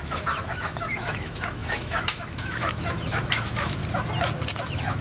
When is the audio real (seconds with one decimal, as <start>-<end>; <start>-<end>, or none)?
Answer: 3.8-4.6